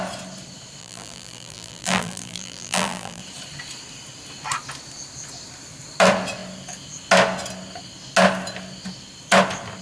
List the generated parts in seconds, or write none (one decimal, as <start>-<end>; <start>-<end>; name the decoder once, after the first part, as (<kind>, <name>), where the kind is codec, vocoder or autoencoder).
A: 0.8-3.2 (vocoder, BigVGAN v2)